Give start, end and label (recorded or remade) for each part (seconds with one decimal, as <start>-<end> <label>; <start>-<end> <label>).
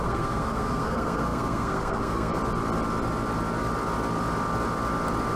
0.0-2.4 remade; 2.4-5.4 recorded